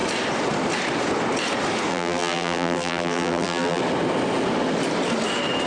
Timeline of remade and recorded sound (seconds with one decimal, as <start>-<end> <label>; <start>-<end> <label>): 0.0-1.9 recorded; 1.9-3.8 remade; 3.8-5.7 recorded